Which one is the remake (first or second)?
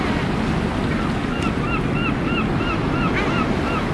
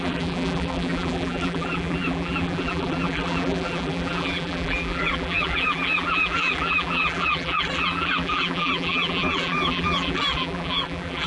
second